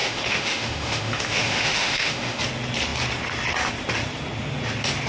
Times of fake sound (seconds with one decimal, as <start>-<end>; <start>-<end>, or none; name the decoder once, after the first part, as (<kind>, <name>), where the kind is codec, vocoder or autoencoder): 0.0-2.4 (autoencoder, DAC-VAE)